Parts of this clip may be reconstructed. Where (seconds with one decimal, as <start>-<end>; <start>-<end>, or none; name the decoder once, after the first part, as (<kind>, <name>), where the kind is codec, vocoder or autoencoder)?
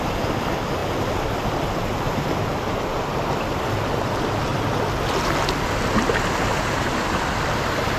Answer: none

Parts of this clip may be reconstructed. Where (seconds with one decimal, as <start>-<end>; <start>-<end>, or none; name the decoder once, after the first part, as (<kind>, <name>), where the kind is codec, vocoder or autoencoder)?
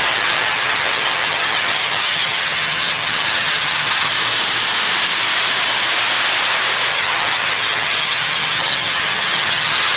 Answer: 0.0-4.1 (vocoder, HiFi-GAN); 6.9-10.0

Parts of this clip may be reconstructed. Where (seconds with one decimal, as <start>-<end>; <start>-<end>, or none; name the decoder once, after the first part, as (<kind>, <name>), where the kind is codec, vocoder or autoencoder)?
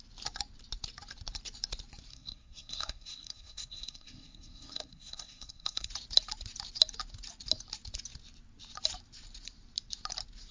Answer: 2.1-5.9 (codec, SNAC)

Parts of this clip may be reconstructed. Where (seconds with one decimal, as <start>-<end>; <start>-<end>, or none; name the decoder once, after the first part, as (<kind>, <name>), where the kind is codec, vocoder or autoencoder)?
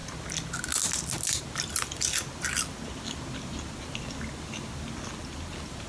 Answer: none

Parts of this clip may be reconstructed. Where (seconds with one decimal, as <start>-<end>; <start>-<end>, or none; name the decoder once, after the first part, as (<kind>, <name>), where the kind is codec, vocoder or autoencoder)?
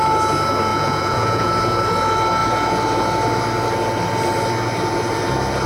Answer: 0.7-1.5 (vocoder, Vocos)